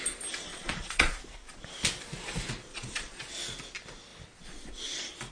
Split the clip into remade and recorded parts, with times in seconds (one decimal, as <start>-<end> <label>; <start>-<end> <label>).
0.0-0.5 recorded; 0.5-1.1 remade; 1.1-2.7 recorded; 2.7-3.2 remade; 3.2-5.3 recorded